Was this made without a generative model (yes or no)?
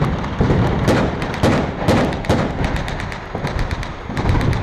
yes